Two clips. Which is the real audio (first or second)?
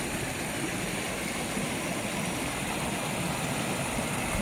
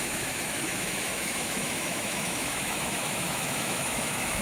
first